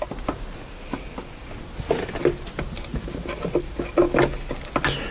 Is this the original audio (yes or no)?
yes